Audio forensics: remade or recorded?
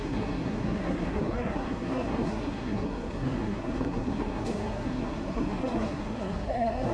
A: remade